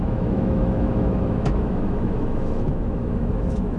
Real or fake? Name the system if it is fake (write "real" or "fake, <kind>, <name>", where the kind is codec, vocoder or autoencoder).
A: fake, autoencoder, DAC-VAE